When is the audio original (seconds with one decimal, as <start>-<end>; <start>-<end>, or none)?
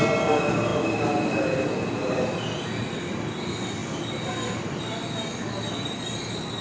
0.0-6.6